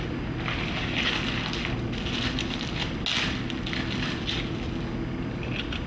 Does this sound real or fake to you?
real